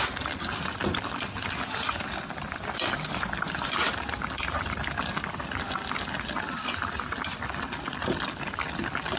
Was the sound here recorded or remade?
recorded